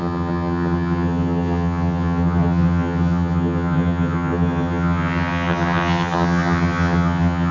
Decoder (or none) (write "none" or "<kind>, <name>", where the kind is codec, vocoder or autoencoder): vocoder, HiFi-GAN